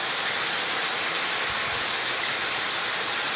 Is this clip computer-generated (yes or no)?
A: no